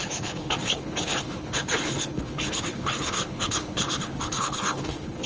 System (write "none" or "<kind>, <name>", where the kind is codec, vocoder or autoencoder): codec, HILCodec